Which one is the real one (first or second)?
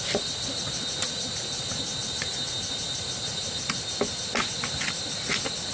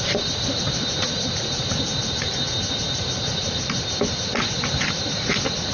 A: first